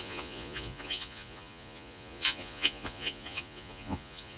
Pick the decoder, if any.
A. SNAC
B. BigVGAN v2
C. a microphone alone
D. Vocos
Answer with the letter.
D